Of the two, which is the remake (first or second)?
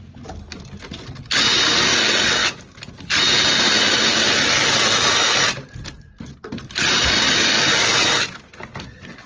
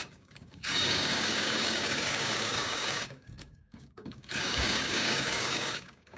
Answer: second